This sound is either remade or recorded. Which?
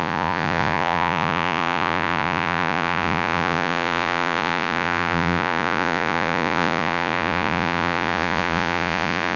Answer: remade